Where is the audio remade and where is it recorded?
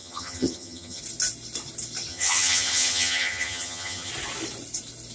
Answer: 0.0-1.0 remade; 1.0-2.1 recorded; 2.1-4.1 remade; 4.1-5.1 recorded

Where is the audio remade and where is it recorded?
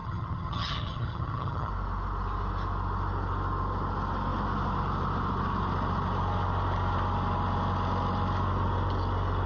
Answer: 0.0-1.7 remade; 1.7-9.5 recorded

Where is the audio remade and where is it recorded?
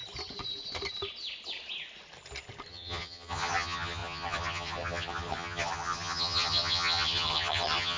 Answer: 0.0-2.7 recorded; 2.7-8.0 remade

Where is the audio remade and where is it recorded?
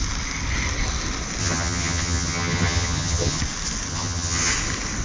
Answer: 0.0-1.4 recorded; 1.4-3.4 remade; 3.4-3.9 recorded; 3.9-4.5 remade; 4.5-5.0 recorded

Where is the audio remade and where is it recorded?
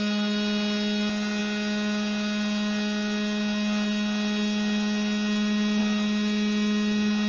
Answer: 0.0-7.3 recorded